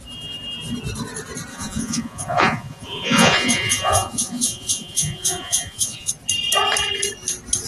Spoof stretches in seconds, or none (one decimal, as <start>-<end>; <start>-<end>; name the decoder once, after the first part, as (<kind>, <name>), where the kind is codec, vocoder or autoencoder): 1.5-6.1 (vocoder, Vocos)